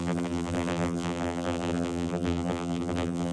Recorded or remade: remade